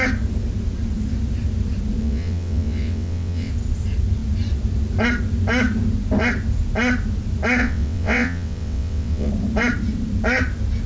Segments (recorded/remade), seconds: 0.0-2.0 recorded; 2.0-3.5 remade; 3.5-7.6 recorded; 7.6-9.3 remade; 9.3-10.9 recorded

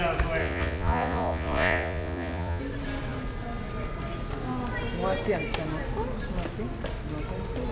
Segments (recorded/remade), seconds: 0.0-0.4 recorded; 0.4-2.6 remade; 2.6-7.7 recorded

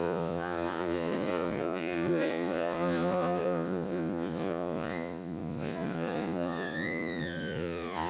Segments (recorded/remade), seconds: 0.0-8.1 remade

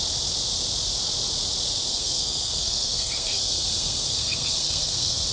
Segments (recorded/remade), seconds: 0.0-1.9 recorded; 1.9-5.3 remade